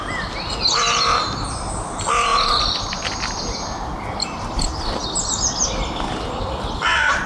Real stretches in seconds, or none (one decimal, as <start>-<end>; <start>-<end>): 0.0-7.3